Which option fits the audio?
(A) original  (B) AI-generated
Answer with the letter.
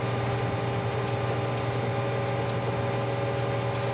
A